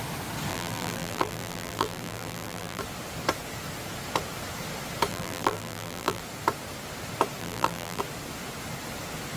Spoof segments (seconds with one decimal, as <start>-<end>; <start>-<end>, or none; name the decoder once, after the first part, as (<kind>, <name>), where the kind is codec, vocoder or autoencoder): 0.5-2.8 (vocoder, BigVGAN v2); 5.1-6.2; 7.4-8.0